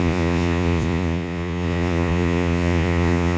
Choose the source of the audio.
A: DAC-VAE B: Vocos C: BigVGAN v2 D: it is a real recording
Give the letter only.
B